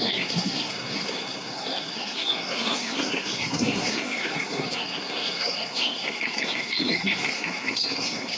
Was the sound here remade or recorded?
remade